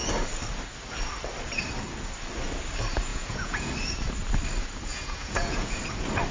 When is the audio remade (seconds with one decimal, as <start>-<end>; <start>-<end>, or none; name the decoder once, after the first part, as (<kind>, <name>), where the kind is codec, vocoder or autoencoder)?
3.1-3.7 (vocoder, Vocos); 4.9-5.8